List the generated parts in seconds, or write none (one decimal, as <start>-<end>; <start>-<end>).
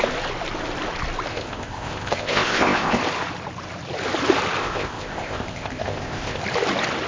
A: 1.3-3.0; 4.6-6.4